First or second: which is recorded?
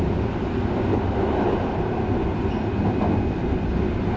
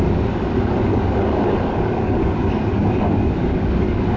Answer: first